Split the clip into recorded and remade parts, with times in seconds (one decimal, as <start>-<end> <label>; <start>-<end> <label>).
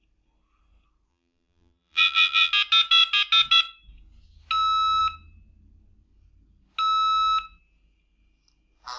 0.0-1.1 recorded; 1.1-2.5 remade; 2.5-9.0 recorded